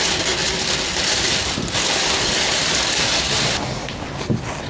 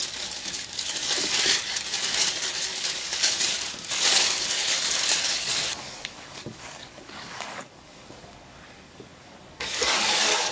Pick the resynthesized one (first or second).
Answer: second